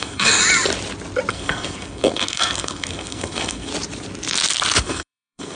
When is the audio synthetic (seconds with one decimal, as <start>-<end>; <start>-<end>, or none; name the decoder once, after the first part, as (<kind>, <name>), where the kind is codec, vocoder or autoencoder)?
0.0-0.4 (codec, SNAC); 1.3-3.7; 4.8-5.6